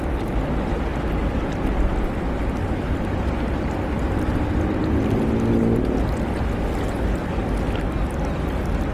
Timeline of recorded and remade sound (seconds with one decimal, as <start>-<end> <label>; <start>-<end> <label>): 0.0-8.9 recorded